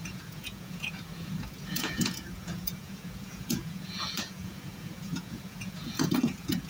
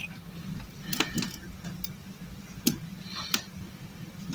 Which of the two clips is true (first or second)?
second